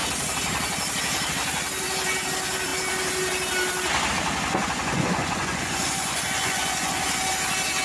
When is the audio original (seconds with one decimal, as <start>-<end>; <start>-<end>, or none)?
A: 0.0-4.6; 7.2-7.8